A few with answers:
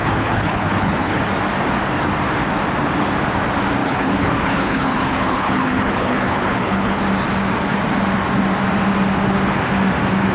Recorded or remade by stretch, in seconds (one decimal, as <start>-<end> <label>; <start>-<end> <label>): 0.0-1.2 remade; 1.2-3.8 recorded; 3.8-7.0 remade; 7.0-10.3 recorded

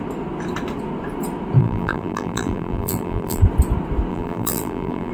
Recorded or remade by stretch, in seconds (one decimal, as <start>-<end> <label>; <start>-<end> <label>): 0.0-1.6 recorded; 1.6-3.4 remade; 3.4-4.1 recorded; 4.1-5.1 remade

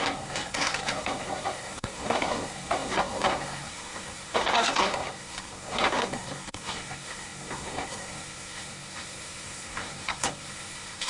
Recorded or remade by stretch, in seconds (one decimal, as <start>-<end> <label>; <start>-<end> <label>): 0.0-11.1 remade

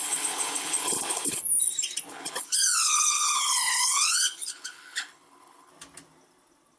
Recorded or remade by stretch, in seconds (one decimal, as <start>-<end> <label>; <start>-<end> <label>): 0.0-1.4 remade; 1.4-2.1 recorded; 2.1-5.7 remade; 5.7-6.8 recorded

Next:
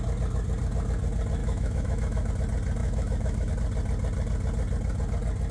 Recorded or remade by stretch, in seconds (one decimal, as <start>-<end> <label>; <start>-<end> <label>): 0.0-1.4 recorded; 1.4-2.3 remade; 2.3-2.8 recorded; 2.8-3.5 remade; 3.5-5.5 recorded